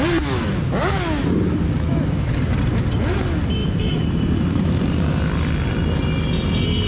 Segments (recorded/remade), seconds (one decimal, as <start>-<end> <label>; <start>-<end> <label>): 0.0-3.6 recorded; 3.6-5.2 remade; 5.2-6.9 recorded